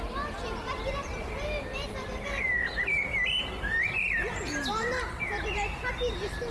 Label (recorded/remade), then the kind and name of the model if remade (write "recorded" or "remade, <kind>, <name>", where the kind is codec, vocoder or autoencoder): remade, vocoder, BigVGAN v2